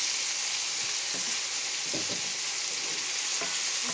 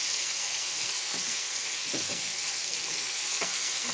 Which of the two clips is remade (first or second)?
second